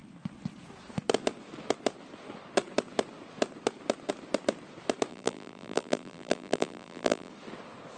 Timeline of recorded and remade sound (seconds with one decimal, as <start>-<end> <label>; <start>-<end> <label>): 0.0-5.1 recorded; 5.1-7.3 remade; 7.3-8.0 recorded